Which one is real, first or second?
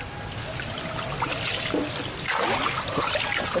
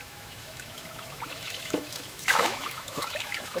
first